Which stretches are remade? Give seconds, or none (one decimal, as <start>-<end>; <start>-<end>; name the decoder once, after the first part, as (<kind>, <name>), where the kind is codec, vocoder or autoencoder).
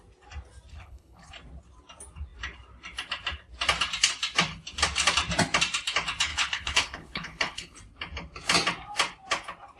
0.7-1.3 (codec, HILCodec); 6.3-7.8